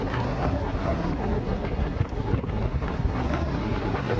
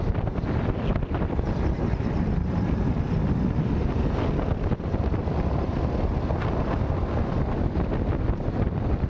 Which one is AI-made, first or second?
first